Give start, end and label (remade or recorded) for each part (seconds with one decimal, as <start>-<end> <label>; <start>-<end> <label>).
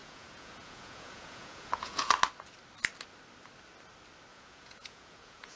0.0-2.1 remade; 2.1-4.3 recorded; 4.3-5.6 remade